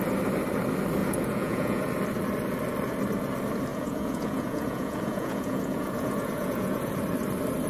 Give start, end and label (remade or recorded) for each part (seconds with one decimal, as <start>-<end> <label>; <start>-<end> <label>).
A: 0.0-1.0 recorded; 1.0-1.9 remade; 1.9-3.7 recorded; 3.7-6.9 remade; 6.9-7.7 recorded